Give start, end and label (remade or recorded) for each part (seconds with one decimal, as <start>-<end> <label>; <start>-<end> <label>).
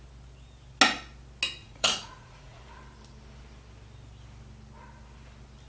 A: 0.0-1.6 recorded; 1.6-2.6 remade; 2.6-5.7 recorded